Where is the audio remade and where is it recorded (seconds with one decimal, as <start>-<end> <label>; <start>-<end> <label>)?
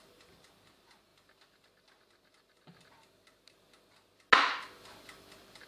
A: 0.0-5.7 recorded